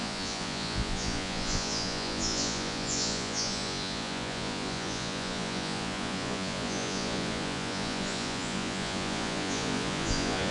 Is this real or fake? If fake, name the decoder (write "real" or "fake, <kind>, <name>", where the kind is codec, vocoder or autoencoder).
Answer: fake, vocoder, Vocos